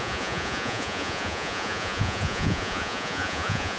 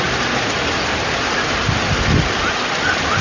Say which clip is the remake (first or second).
first